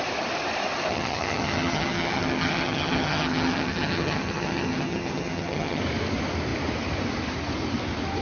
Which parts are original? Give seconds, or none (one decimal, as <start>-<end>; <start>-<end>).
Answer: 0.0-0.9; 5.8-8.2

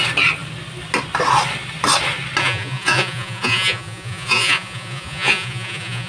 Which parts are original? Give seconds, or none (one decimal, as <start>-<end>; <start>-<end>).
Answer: 0.0-2.4

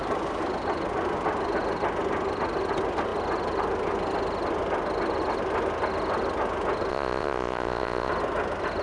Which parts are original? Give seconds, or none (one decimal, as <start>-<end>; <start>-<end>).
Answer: 0.0-6.9; 8.1-8.8

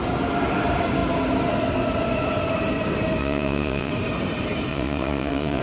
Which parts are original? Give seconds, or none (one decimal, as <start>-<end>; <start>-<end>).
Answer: 0.0-3.2; 3.9-4.7

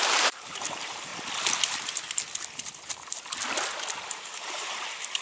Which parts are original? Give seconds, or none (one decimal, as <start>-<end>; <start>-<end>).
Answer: 1.1-4.1

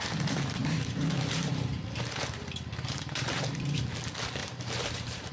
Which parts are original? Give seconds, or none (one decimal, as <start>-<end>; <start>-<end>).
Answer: 0.0-0.6; 3.8-4.4

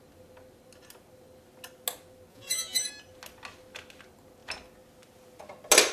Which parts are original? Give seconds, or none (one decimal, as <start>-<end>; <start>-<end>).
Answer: 0.0-2.3; 2.9-5.9

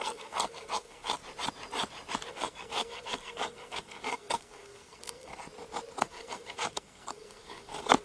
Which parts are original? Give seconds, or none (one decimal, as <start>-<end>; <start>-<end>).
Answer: 1.1-2.3; 5.4-6.0